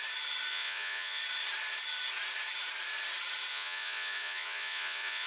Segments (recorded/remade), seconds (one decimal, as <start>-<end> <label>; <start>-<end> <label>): 0.0-0.5 recorded; 0.5-1.2 remade; 1.2-3.5 recorded; 3.5-5.3 remade